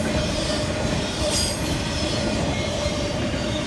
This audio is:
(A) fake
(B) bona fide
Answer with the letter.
A